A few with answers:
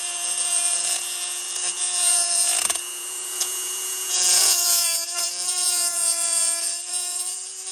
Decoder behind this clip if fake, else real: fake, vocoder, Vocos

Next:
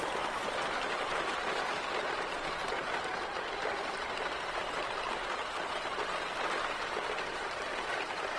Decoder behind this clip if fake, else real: real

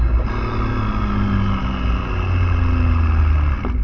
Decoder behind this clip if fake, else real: real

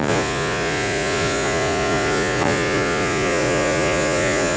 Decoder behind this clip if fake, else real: fake, vocoder, Vocos